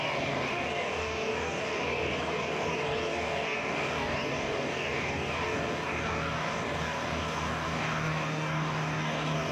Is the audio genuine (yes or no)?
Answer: no